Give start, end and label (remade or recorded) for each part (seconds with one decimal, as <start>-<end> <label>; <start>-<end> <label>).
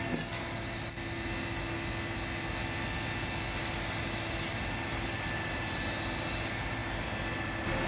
0.0-7.9 recorded